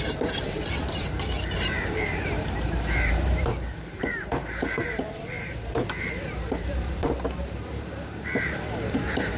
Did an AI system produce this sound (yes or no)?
yes